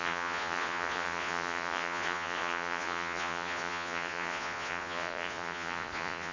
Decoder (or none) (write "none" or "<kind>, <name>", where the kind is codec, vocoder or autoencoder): vocoder, Vocos